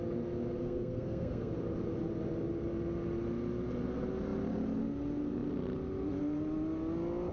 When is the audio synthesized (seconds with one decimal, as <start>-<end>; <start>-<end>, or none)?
0.6-1.5